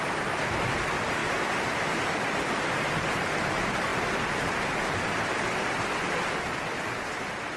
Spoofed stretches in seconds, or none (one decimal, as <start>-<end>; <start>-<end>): 0.0-1.2; 1.7-7.6